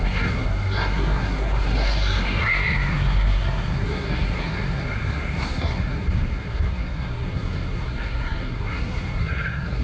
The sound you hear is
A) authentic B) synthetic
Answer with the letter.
B